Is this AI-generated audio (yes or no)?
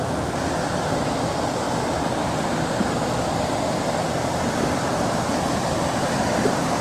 no